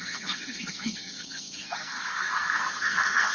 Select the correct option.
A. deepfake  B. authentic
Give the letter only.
A